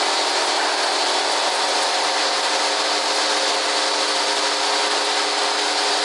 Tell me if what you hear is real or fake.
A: real